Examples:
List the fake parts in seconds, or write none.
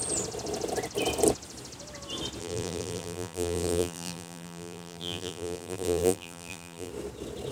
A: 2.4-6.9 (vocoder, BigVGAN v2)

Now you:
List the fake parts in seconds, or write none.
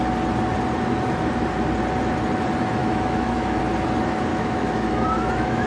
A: 2.8-3.6 (autoencoder, DAC-VAE); 4.3-5.7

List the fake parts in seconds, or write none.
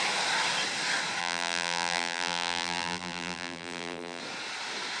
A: 1.2-4.2 (vocoder, BigVGAN v2)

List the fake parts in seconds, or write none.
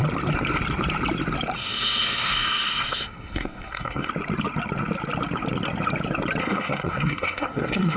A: 1.6-4.1 (codec, SNAC); 6.4-8.0